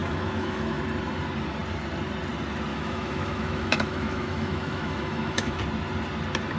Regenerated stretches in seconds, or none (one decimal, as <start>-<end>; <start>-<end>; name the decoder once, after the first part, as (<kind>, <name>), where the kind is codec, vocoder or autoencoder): 0.0-0.8 (autoencoder, DAC-VAE); 2.7-5.6